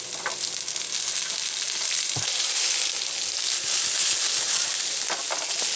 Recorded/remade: recorded